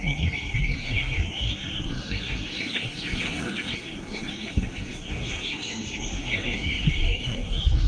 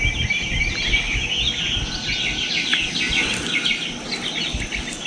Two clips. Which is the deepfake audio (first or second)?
first